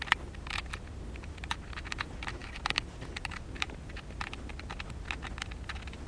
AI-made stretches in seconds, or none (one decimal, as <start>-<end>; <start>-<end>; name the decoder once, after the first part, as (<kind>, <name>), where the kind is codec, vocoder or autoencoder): none